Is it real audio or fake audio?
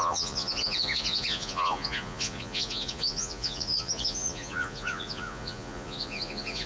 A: fake